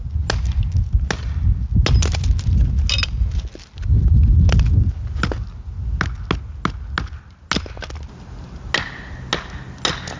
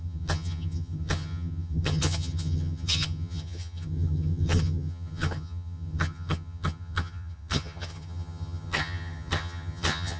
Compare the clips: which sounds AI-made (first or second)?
second